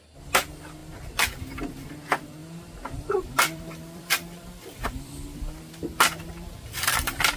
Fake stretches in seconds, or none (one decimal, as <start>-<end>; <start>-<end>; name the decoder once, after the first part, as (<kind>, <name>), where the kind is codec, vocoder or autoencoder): 0.8-1.9 (vocoder, BigVGAN v2); 2.4-5.6